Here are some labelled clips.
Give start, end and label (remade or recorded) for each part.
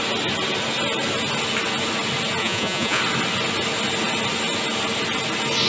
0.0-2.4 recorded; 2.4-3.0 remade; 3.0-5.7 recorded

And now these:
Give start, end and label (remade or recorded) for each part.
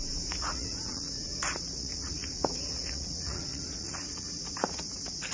0.0-5.3 remade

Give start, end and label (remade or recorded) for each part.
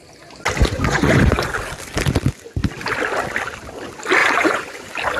0.0-0.6 recorded; 0.6-1.5 remade; 1.5-4.2 recorded; 4.2-4.8 remade; 4.8-5.2 recorded